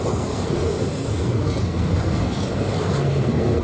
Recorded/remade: remade